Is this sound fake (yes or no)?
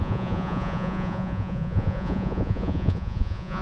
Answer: yes